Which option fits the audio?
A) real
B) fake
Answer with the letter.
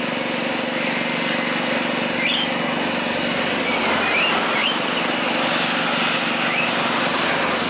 A